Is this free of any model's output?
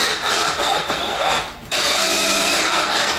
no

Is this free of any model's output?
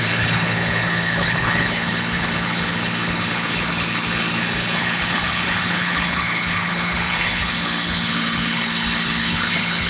no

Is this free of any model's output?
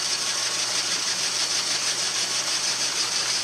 no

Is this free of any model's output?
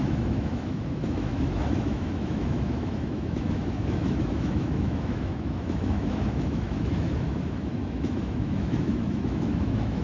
no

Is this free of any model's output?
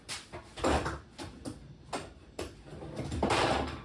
yes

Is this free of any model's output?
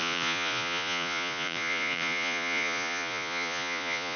no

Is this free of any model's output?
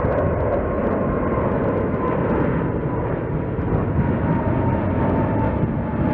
yes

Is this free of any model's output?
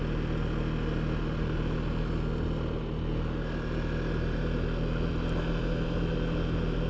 yes